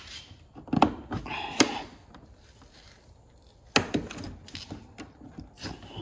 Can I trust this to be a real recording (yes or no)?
yes